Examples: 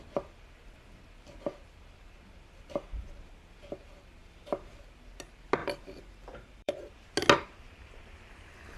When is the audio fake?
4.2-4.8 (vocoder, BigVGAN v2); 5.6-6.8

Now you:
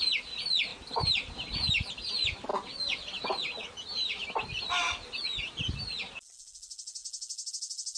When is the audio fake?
0.7-1.3 (vocoder, BigVGAN v2)

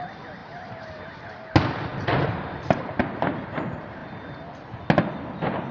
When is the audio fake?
0.4-1.2 (vocoder, BigVGAN v2); 1.9-3.0

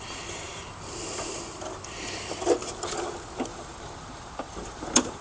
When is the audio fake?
3.5-5.2 (vocoder, BigVGAN v2)

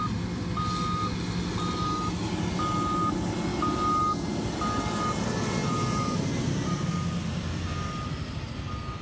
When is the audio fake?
5.6-6.9 (vocoder, BigVGAN v2)

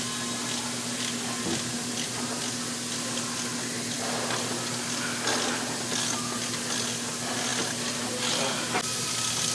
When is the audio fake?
none

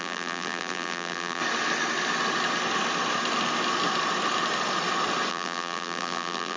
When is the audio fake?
0.0-1.4 (vocoder, BigVGAN v2); 5.3-6.6